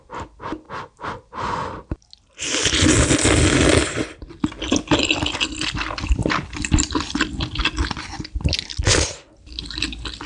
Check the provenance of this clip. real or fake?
real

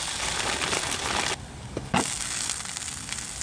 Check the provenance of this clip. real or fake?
real